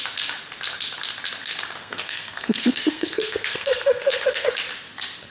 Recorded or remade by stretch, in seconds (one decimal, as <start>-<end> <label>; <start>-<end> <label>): 0.0-1.8 recorded; 1.8-4.5 remade; 4.5-5.3 recorded